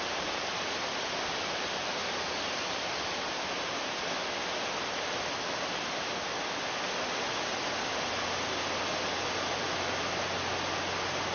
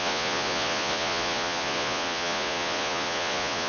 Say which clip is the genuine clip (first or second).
first